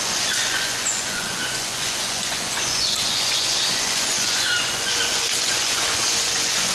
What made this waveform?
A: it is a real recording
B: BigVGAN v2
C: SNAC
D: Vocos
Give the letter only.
D